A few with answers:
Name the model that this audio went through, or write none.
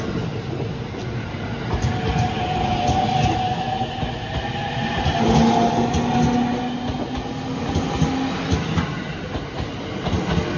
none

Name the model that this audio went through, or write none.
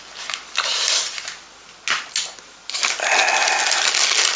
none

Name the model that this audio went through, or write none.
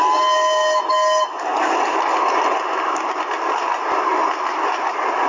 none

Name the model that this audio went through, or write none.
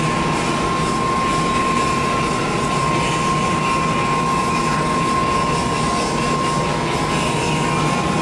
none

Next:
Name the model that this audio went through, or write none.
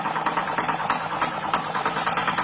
none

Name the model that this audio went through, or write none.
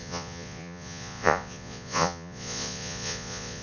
vocoder, Vocos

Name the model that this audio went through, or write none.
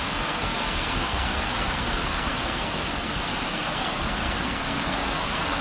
codec, SNAC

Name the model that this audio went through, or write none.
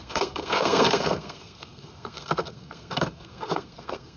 codec, SNAC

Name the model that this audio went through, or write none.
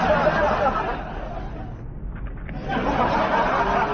none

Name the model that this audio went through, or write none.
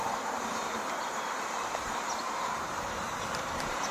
vocoder, BigVGAN v2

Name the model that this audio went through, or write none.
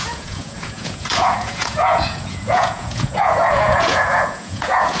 vocoder, Vocos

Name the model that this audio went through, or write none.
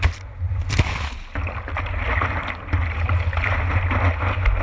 none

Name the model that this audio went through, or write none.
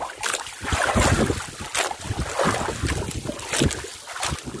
none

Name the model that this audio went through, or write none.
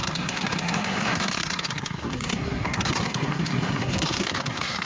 codec, SNAC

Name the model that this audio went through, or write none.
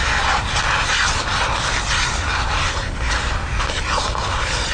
none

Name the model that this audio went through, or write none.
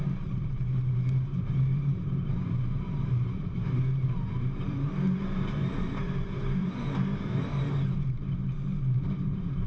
vocoder, BigVGAN v2